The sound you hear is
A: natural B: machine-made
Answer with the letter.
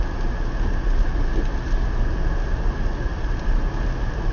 A